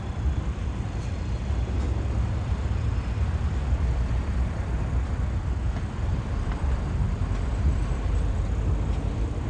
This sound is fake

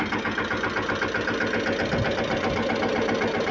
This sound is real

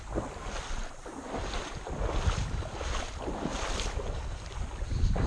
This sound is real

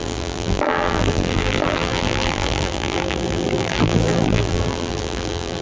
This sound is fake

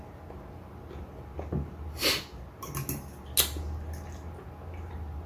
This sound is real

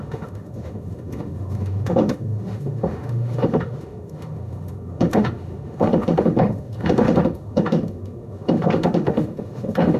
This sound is fake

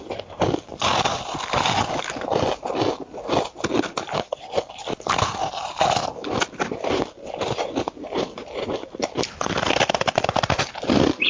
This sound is real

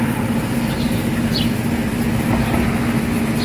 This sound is real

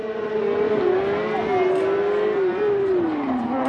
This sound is real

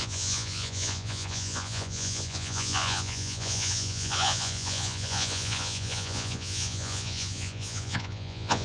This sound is fake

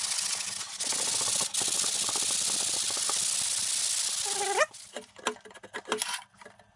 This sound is real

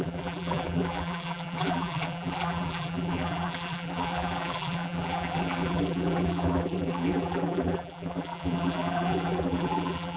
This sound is fake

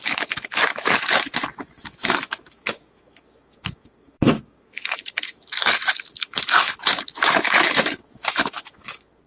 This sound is fake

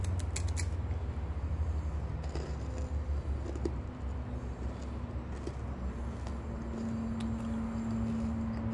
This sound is real